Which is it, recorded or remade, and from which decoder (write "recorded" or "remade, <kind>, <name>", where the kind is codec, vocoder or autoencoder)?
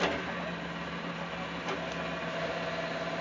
recorded